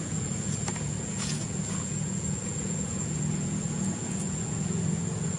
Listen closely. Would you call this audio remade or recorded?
remade